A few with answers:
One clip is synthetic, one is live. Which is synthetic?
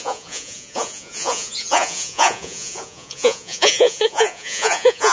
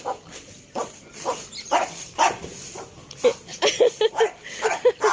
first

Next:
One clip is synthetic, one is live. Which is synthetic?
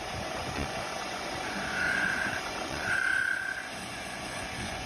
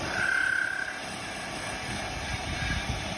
first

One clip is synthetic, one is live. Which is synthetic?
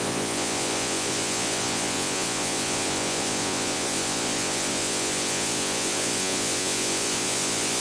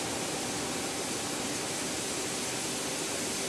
first